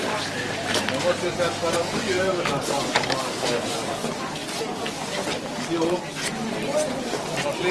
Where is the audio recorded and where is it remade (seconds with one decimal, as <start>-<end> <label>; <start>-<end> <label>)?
0.0-1.8 recorded; 1.8-4.0 remade; 4.0-7.7 recorded